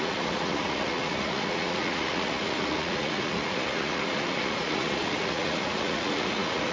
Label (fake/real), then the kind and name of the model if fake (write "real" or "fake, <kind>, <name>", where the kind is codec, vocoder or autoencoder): fake, vocoder, Vocos